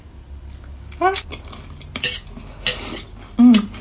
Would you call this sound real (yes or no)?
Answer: yes